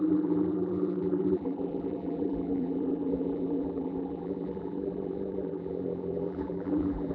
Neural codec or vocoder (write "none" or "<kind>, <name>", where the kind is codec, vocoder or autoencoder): vocoder, BigVGAN v2